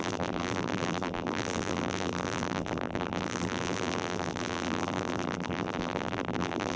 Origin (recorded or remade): remade